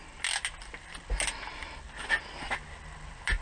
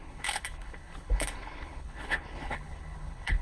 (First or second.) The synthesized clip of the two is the second